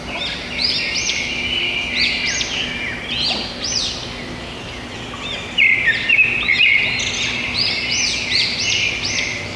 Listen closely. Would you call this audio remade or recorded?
recorded